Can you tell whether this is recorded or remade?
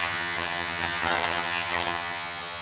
remade